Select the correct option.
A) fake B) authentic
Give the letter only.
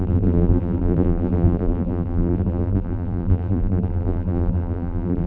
A